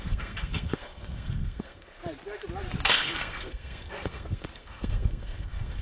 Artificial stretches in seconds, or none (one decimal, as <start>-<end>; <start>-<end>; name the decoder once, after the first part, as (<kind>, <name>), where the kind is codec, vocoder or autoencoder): 0.0-2.0 (codec, SNAC); 2.9-5.8